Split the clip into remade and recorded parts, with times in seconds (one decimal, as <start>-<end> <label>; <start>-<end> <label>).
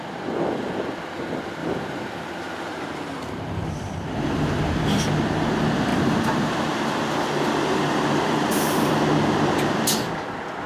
0.0-1.6 recorded; 1.6-4.6 remade; 4.6-5.9 recorded; 5.9-8.9 remade; 8.9-10.7 recorded